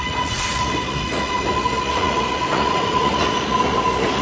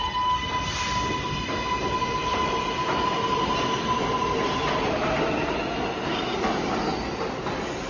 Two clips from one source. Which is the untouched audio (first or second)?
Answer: second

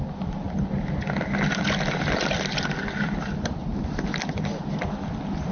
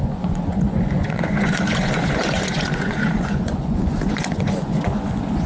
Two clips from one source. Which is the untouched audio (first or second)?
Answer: first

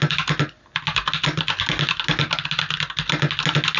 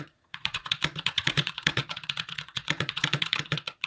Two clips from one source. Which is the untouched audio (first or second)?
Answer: first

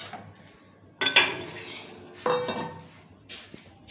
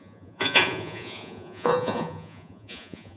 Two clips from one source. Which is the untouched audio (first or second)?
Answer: first